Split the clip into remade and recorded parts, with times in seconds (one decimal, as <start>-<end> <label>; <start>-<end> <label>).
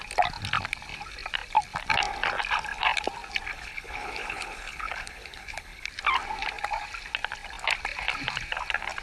0.0-3.5 recorded; 3.5-5.9 remade; 5.9-9.0 recorded